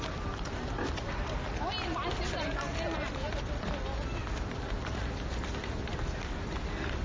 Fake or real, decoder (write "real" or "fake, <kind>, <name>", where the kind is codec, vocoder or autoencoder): real